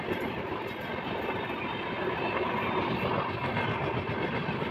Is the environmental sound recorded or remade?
recorded